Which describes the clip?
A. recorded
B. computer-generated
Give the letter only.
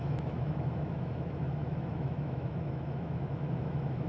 B